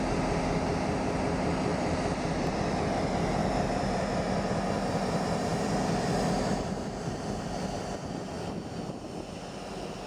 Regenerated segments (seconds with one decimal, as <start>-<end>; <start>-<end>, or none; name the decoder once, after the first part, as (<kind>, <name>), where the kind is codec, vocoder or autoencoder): 1.7-2.9 (vocoder, BigVGAN v2); 3.4-4.1; 5.5-8.0